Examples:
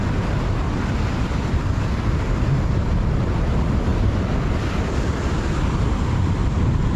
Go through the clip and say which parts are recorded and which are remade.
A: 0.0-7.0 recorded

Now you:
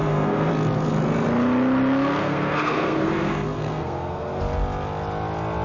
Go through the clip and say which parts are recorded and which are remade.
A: 0.0-0.5 remade; 0.5-2.2 recorded; 2.2-4.4 remade; 4.4-5.6 recorded

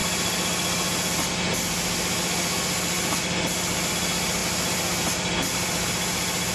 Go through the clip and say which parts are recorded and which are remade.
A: 0.0-6.5 recorded

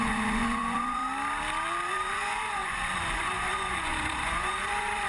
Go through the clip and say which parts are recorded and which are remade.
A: 0.0-1.0 remade; 1.0-1.9 recorded; 1.9-5.1 remade

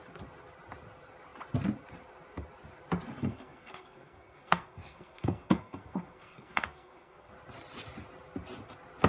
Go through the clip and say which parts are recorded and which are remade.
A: 0.0-3.2 recorded; 3.2-7.3 remade; 7.3-9.1 recorded

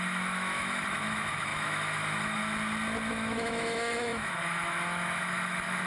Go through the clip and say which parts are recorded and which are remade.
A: 0.0-2.4 remade; 2.4-3.1 recorded; 3.1-5.9 remade